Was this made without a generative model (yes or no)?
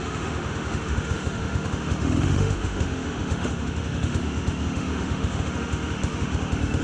no